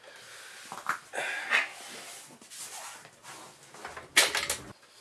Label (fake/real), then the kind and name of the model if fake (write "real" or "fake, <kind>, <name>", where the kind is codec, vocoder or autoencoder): real